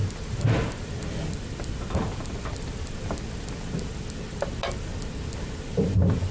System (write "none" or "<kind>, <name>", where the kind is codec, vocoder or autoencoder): none